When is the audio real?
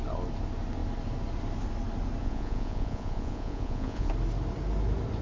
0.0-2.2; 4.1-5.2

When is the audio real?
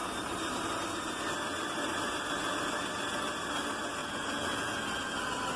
0.0-4.0; 4.9-5.6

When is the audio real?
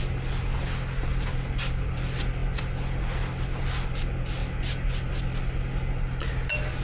0.0-6.8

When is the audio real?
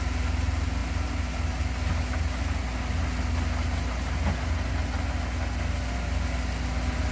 0.0-7.1